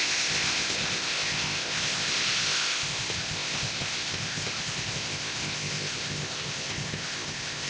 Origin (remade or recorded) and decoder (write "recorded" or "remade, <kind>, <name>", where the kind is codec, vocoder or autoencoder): remade, codec, ZipCodec